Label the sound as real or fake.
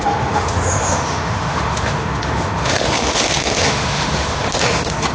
fake